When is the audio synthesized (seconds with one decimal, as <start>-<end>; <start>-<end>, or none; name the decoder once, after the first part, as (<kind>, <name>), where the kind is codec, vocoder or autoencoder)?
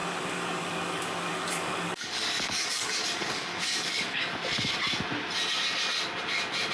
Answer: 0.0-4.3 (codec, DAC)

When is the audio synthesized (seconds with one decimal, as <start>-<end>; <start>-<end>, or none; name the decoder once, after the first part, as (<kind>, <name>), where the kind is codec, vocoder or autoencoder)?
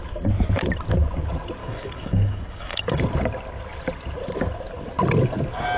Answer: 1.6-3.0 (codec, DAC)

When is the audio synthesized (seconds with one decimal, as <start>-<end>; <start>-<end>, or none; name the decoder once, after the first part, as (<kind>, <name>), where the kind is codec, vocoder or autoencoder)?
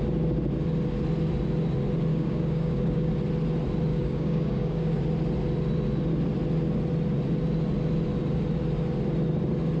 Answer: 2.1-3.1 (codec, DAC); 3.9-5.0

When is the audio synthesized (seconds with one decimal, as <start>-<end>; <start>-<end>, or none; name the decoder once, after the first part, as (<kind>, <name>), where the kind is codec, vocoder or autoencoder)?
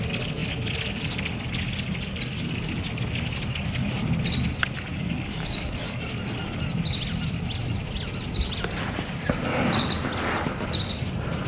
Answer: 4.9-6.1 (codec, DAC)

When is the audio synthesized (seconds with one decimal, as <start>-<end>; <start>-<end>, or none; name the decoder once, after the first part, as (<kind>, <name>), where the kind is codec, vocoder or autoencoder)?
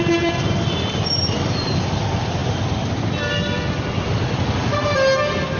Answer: none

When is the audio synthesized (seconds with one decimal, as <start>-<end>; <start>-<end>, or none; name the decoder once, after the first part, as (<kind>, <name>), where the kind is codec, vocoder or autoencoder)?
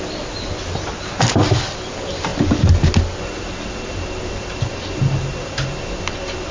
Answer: none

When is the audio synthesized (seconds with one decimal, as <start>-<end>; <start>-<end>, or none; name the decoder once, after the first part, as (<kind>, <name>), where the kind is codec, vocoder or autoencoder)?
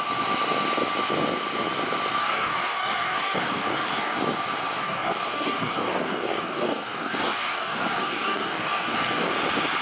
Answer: 2.2-4.2 (codec, DAC); 4.8-9.3